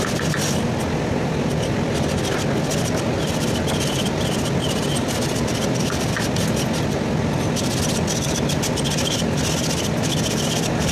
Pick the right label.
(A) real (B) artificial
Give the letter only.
A